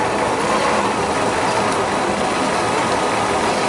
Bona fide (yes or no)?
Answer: yes